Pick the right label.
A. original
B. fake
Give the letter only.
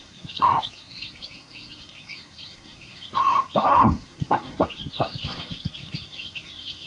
B